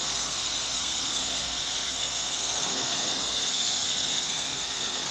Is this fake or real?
fake